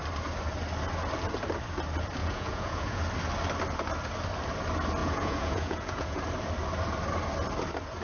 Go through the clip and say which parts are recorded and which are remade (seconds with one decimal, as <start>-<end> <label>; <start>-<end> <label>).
0.0-2.2 recorded; 2.2-3.0 remade; 3.0-5.0 recorded; 5.0-6.2 remade; 6.2-8.0 recorded